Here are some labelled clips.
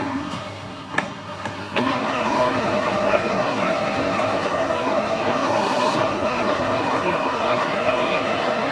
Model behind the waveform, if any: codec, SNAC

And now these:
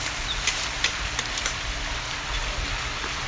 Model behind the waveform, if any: none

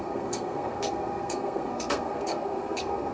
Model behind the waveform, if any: codec, SNAC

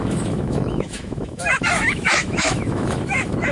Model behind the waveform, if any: autoencoder, DAC-VAE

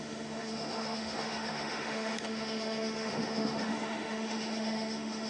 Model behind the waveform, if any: autoencoder, DAC-VAE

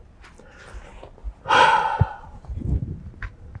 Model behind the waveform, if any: none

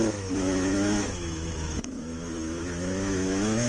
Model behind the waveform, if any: autoencoder, DAC-VAE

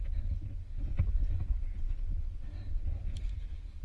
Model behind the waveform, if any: none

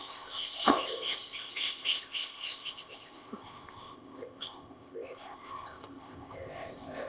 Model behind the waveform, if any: codec, ZipCodec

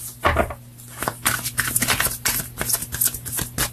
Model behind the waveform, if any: none